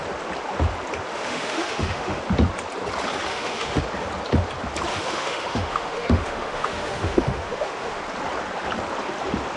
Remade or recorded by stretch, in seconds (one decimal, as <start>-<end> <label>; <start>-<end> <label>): 0.0-1.1 recorded; 1.1-2.2 remade; 2.2-3.3 recorded; 3.3-3.8 remade; 3.8-4.9 recorded; 4.9-8.0 remade; 8.0-9.6 recorded